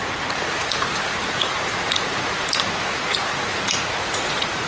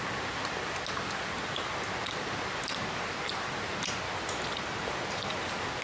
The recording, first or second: second